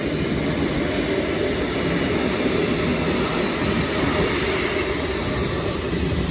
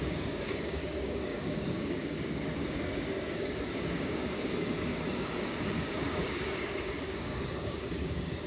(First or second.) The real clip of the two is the first